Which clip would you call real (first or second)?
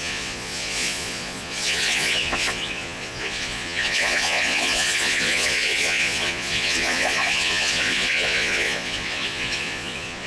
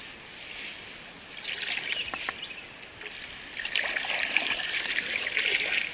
second